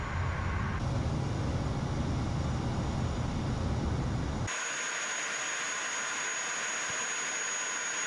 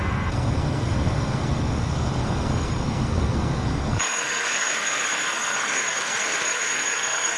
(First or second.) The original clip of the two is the first